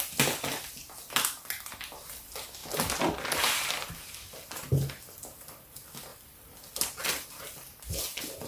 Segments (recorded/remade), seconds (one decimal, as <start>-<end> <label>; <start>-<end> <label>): 0.0-8.5 recorded